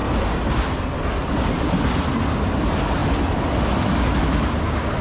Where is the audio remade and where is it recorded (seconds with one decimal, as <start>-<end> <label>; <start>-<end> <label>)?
0.0-5.0 recorded